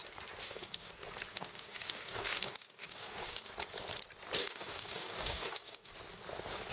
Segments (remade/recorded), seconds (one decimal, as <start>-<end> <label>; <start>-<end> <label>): 0.0-0.4 recorded; 0.4-0.9 remade; 0.9-1.3 recorded; 1.3-3.5 remade; 3.5-4.4 recorded; 4.4-5.9 remade; 5.9-6.7 recorded